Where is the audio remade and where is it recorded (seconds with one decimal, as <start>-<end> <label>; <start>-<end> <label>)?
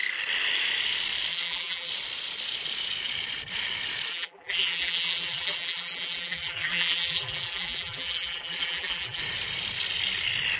0.0-1.3 recorded; 1.3-1.9 remade; 1.9-4.1 recorded; 4.1-9.2 remade; 9.2-10.6 recorded